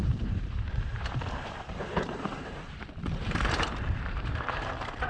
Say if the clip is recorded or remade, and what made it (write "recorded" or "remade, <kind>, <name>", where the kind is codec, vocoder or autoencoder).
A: remade, vocoder, BigVGAN v2